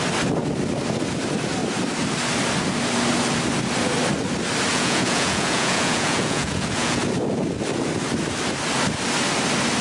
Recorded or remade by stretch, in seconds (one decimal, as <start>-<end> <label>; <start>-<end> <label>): 0.0-4.7 recorded; 4.7-7.0 remade; 7.0-9.8 recorded